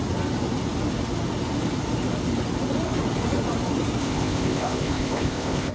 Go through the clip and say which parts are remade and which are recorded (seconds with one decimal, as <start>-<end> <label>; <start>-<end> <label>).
0.0-4.0 recorded; 4.0-5.7 remade